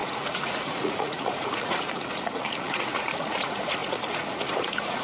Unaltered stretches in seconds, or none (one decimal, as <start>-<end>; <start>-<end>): none